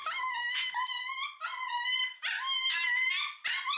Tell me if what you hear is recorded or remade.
recorded